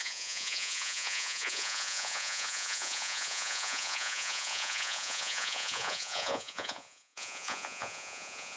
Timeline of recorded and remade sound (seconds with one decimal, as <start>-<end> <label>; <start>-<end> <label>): 0.0-8.6 remade